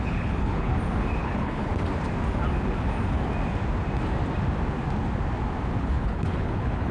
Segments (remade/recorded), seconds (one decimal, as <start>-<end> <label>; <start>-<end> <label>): 0.0-0.7 remade; 0.7-1.2 recorded; 1.2-1.7 remade; 1.7-5.8 recorded; 5.8-6.9 remade